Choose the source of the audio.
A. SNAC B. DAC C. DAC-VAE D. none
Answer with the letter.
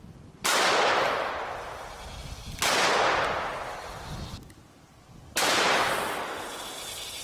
D